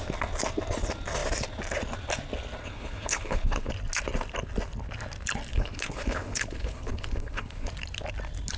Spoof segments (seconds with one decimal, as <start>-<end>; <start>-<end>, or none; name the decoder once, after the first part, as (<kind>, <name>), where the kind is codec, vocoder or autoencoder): 2.6-3.7 (codec, HILCodec); 5.5-7.7